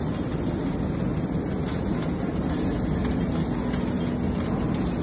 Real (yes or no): yes